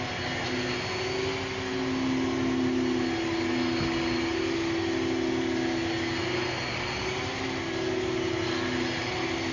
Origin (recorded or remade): recorded